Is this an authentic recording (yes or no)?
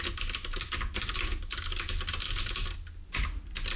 yes